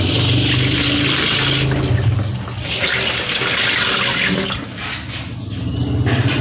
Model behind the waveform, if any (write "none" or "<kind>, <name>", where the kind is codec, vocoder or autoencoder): none